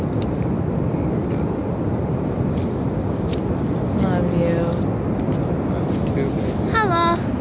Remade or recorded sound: recorded